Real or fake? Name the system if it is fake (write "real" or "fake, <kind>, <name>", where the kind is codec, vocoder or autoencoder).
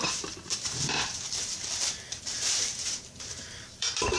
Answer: fake, vocoder, BigVGAN v2